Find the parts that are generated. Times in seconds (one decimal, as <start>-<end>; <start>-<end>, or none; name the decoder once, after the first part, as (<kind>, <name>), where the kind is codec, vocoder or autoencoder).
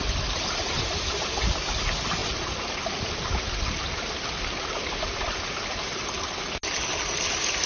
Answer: none